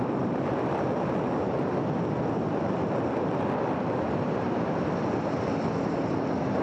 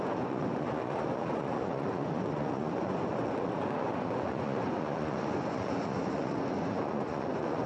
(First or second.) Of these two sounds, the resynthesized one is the second